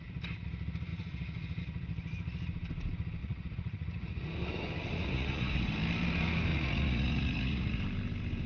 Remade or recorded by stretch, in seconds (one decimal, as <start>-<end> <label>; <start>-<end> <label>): 0.0-3.2 recorded; 3.2-4.3 remade; 4.3-4.9 recorded; 4.9-5.7 remade; 5.7-6.5 recorded; 6.5-7.8 remade; 7.8-8.5 recorded